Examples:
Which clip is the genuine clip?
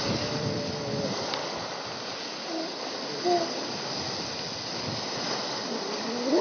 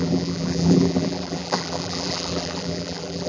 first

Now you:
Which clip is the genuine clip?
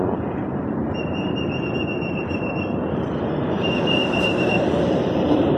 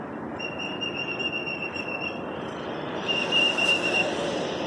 second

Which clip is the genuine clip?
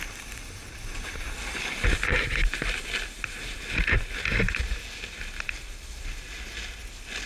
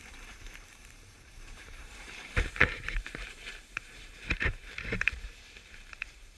first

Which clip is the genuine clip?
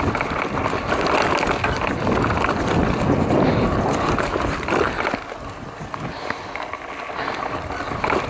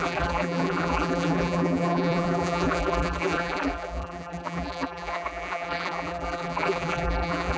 first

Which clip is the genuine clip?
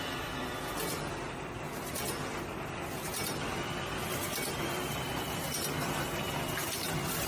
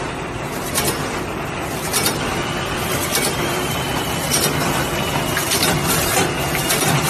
first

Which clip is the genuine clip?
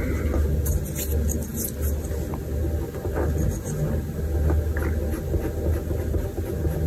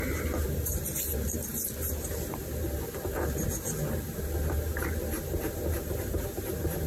first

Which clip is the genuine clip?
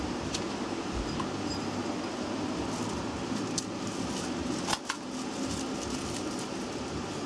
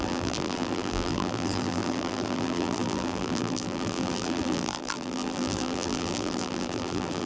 first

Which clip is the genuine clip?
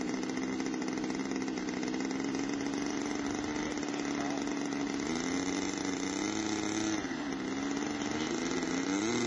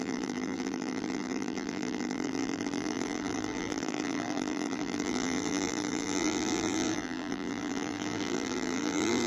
first